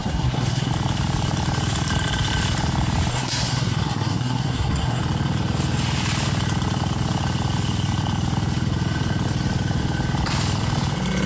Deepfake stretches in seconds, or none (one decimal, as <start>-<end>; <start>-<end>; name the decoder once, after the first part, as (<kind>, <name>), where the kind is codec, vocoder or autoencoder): 0.0-0.7 (codec, SNAC); 3.1-5.0